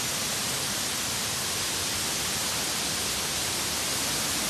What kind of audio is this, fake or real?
real